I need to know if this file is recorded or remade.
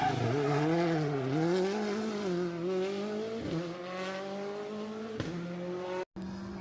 recorded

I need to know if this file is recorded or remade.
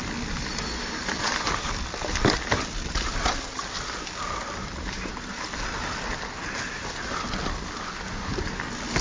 recorded